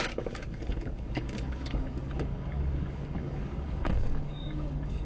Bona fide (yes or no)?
no